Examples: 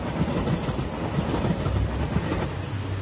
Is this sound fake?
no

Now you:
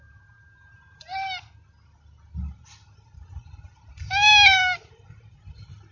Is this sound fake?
no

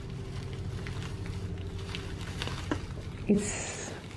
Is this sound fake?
no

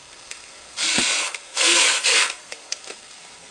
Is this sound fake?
yes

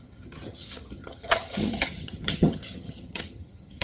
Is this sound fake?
yes